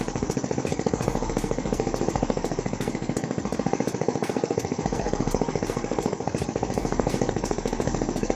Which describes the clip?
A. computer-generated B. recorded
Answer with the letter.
A